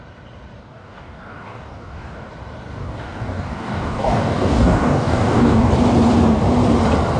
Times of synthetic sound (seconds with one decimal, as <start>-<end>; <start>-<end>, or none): 0.6-2.3; 2.8-5.7